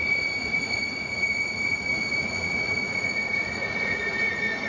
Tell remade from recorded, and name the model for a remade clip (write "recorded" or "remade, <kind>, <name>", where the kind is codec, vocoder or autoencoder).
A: remade, vocoder, Vocos